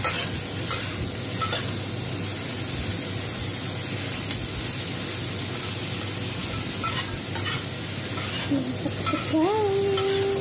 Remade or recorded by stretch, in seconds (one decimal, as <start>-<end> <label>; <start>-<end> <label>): 0.0-10.4 recorded